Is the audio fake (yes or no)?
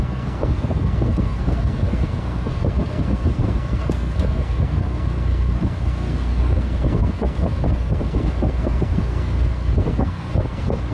yes